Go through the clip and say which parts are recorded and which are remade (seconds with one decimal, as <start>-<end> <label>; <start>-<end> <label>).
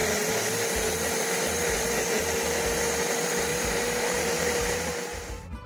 0.0-3.5 recorded; 3.5-4.9 remade; 4.9-5.7 recorded